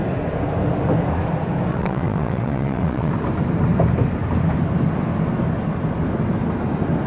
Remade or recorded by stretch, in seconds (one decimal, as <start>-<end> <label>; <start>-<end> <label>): 0.0-1.7 recorded; 1.7-3.1 remade; 3.1-7.1 recorded